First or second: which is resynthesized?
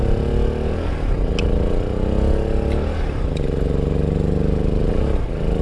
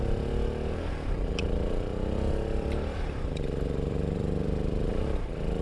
second